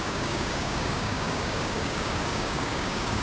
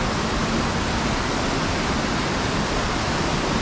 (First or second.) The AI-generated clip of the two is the first